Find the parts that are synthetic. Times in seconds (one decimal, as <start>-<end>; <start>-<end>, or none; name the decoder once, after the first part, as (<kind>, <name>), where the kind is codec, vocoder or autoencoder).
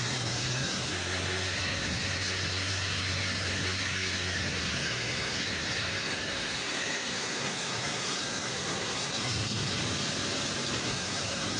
0.0-9.8 (codec, SNAC); 10.8-11.6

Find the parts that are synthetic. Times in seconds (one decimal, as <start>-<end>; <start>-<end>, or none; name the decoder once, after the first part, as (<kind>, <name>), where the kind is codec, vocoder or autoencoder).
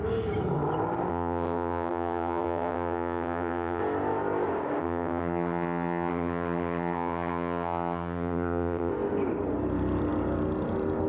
1.1-3.8 (vocoder, HiFi-GAN); 4.8-8.9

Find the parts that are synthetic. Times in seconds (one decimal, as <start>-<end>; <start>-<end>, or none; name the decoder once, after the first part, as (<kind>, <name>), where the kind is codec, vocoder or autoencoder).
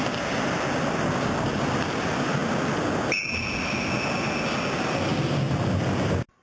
none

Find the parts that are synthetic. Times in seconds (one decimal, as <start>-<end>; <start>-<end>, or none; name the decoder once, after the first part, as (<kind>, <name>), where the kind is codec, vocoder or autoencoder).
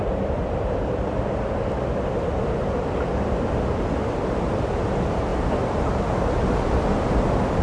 none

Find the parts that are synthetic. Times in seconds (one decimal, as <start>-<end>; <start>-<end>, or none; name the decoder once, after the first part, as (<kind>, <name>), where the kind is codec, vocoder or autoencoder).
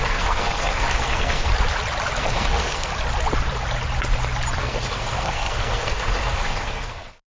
0.0-1.5 (codec, SNAC); 2.2-2.9; 4.6-7.3